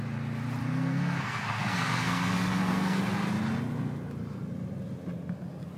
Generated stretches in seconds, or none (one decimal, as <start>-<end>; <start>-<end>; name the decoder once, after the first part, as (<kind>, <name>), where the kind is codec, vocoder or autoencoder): 0.6-3.0 (codec, SNAC)